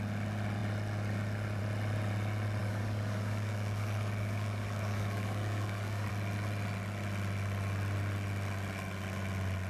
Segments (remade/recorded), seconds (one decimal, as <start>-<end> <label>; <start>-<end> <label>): 0.0-2.6 recorded; 2.6-6.1 remade; 6.1-9.7 recorded